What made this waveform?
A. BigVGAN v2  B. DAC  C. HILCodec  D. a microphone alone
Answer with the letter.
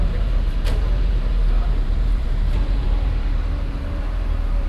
A